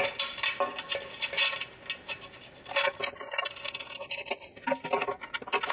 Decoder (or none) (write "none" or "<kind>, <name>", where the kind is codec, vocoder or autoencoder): none